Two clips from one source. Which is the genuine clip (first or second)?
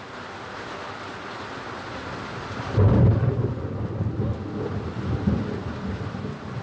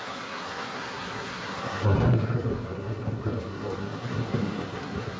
first